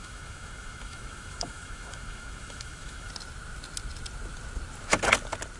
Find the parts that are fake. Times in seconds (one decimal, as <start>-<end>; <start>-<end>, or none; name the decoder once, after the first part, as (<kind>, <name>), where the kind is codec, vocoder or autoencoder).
0.0-3.1 (autoencoder, DAC-VAE)